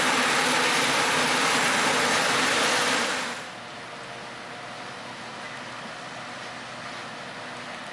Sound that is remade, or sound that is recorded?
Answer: recorded